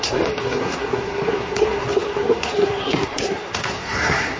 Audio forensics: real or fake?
fake